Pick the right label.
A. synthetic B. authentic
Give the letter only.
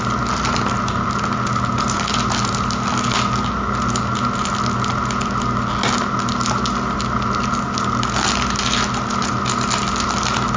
B